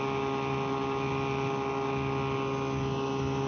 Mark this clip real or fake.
real